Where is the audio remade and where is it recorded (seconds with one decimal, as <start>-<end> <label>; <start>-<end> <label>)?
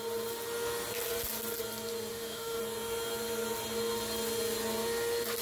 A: 0.0-2.1 recorded; 2.1-2.6 remade; 2.6-5.4 recorded